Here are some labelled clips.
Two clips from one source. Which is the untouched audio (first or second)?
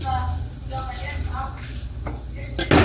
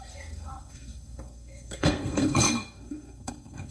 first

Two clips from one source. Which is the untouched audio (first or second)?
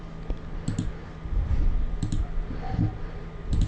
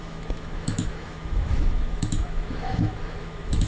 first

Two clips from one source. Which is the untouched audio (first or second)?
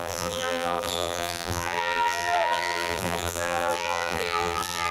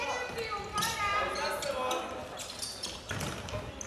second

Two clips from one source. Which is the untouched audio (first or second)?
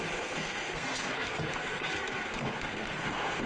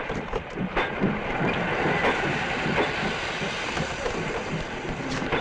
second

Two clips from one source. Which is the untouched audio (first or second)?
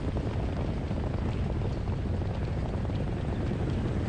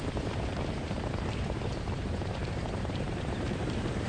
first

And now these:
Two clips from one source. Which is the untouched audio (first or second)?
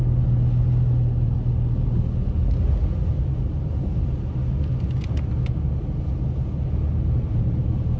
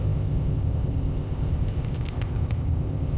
first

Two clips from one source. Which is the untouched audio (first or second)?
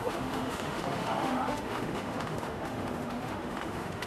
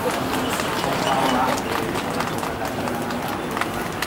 second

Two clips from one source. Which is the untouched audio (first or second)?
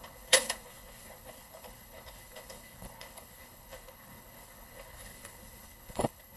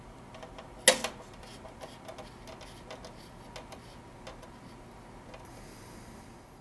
second